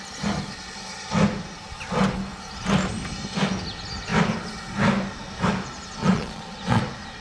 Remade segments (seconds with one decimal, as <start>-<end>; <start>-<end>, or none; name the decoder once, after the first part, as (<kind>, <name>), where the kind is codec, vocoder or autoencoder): 6.0-6.8 (vocoder, Vocos)